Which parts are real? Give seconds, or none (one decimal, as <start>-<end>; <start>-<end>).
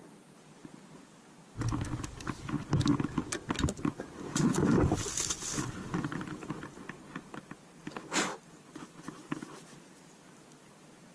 0.0-11.1